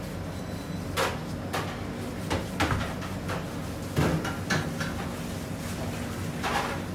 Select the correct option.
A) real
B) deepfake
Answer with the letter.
A